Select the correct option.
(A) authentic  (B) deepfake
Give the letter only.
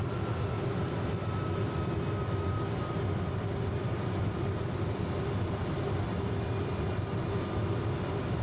A